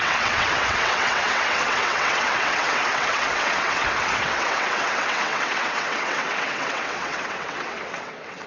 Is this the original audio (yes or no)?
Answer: no